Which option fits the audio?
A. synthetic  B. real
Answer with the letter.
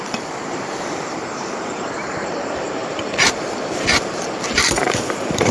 A